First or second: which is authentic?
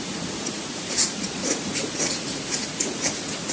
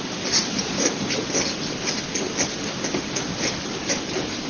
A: second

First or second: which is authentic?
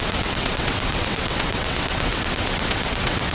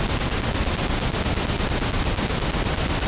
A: second